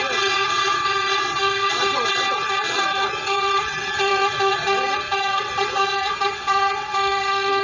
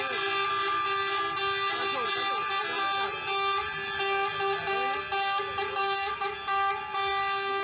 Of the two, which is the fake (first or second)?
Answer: first